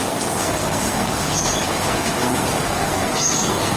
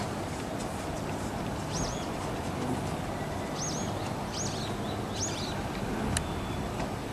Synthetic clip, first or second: first